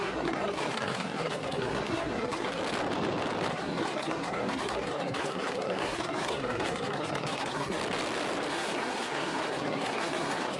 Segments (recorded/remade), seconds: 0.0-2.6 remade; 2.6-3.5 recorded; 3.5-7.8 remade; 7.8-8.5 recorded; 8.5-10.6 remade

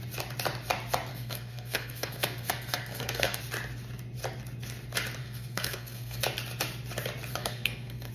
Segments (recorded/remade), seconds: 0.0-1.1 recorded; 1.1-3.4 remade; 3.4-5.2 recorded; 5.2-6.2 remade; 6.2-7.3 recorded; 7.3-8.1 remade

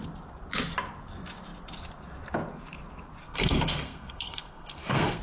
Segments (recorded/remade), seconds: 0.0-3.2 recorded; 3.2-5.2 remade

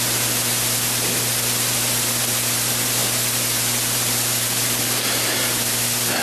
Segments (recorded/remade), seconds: 0.0-6.2 recorded